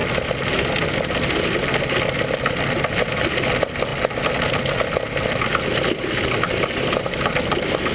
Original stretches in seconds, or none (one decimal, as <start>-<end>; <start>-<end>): 0.0-7.9